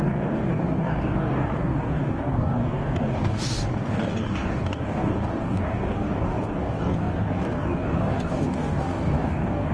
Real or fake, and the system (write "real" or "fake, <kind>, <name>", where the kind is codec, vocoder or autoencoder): fake, codec, DAC